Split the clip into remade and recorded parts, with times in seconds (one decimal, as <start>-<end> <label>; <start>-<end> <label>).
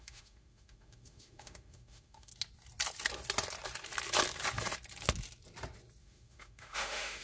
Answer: 0.0-2.3 remade; 2.3-6.0 recorded; 6.0-7.2 remade